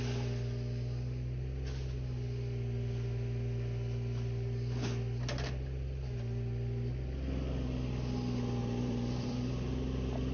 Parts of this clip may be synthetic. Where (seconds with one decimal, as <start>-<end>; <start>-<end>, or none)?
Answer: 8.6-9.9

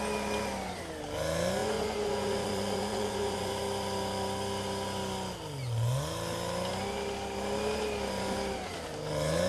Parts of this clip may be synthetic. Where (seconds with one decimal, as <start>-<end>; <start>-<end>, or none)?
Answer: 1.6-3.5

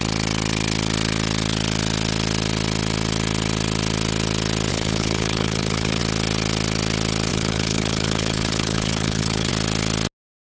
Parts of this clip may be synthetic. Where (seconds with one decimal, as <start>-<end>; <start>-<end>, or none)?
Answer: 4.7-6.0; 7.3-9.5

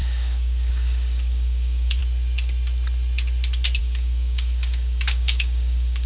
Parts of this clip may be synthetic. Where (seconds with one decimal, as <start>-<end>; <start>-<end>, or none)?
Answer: 0.0-2.0; 3.8-6.1